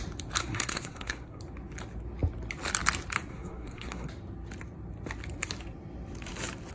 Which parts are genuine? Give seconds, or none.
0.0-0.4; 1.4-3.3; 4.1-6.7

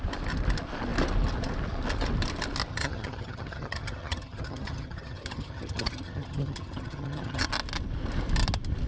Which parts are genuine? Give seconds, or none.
0.0-2.7; 7.5-8.9

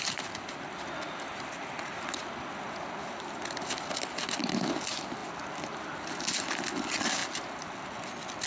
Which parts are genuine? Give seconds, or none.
0.0-8.5

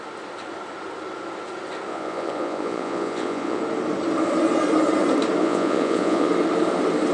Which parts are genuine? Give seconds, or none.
0.0-1.9; 3.6-5.4; 6.3-7.1

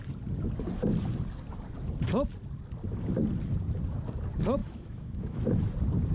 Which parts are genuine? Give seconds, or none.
0.0-4.6; 5.4-6.1

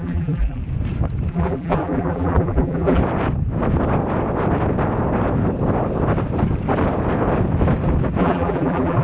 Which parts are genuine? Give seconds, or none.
0.6-1.3; 3.0-8.2

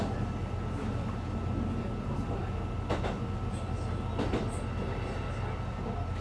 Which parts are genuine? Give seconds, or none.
0.0-6.2

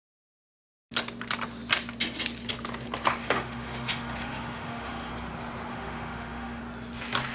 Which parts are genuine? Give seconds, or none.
0.0-3.2; 5.1-5.7; 6.6-7.3